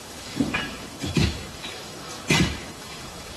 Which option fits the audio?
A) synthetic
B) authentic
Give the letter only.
A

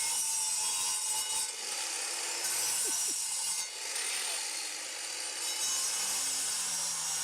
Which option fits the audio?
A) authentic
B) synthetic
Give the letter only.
A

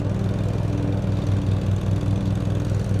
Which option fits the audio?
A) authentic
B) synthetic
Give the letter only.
A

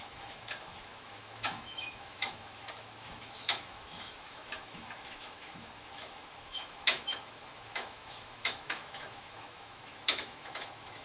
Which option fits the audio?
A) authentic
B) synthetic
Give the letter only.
B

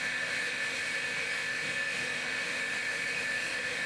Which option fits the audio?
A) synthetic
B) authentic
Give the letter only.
A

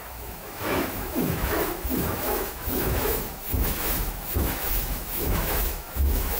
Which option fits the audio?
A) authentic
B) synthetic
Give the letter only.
B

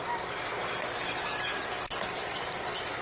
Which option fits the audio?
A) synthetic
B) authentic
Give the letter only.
B